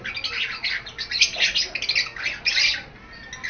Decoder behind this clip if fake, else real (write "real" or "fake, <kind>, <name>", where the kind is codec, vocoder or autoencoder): real